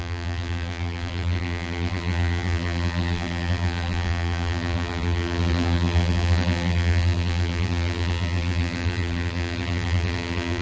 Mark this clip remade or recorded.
remade